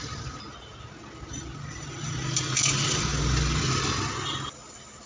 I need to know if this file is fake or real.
real